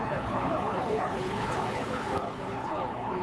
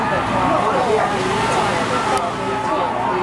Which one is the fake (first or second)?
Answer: first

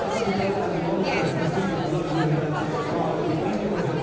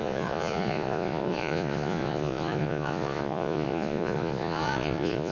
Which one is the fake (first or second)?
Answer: second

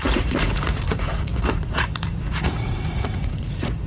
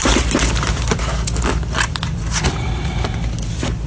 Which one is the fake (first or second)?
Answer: first